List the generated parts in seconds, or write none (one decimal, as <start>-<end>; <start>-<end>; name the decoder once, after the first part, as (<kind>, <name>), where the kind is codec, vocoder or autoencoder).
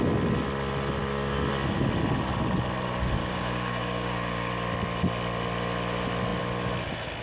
1.0-1.5 (codec, DAC); 3.2-4.5